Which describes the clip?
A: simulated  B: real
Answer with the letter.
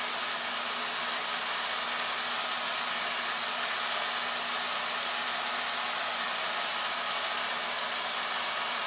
B